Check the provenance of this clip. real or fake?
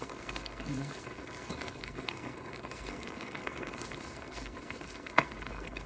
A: fake